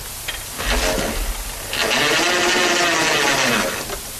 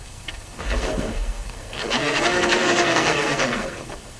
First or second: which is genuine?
first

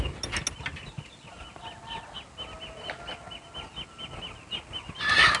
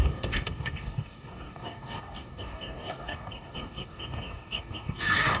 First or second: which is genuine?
first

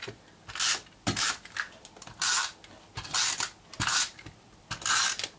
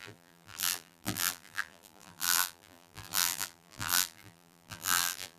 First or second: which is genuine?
first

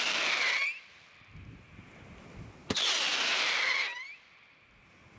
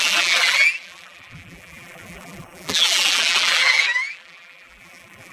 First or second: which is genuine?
first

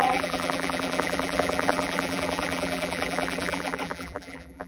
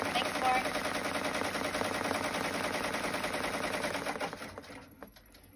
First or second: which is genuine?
second